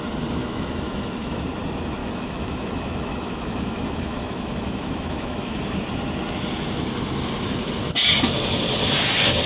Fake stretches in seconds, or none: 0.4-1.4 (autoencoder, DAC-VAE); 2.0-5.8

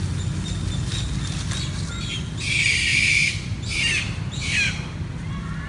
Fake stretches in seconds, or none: none

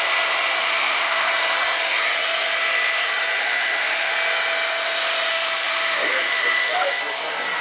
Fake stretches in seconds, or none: 0.6-1.3 (autoencoder, DAC-VAE); 3.4-4.1; 5.3-7.0

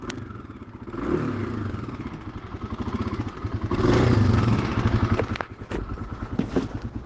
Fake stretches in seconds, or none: none

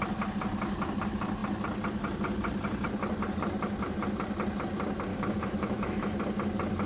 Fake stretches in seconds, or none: 5.1-6.2 (autoencoder, DAC-VAE)